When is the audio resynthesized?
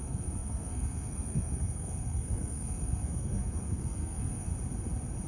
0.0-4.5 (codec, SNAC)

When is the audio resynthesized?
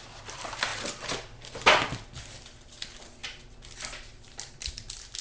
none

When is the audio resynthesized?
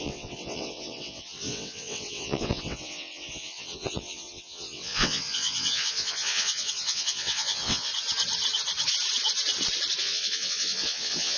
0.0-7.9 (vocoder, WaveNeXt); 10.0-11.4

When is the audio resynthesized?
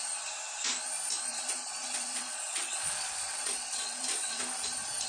1.3-4.4 (vocoder, Vocos)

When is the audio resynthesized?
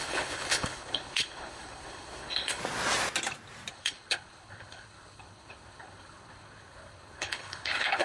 0.0-2.6 (codec, HILCodec); 3.7-8.0